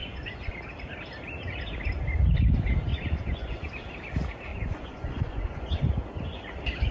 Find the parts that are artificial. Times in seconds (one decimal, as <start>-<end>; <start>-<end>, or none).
0.0-0.5; 2.9-3.7; 4.5-5.9